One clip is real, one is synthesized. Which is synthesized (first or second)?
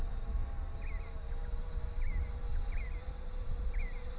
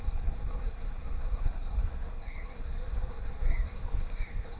second